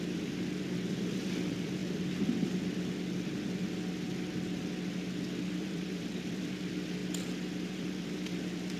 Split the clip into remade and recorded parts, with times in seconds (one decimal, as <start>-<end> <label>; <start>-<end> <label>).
0.0-1.8 remade; 1.8-5.5 recorded; 5.5-7.0 remade; 7.0-7.7 recorded; 7.7-8.8 remade